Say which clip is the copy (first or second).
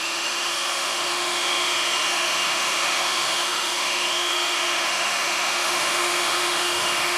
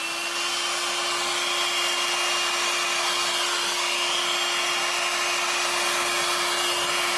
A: first